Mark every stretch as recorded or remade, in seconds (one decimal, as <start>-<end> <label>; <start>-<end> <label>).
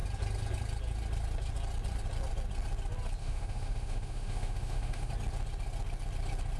0.0-3.2 recorded; 3.2-5.1 remade; 5.1-6.6 recorded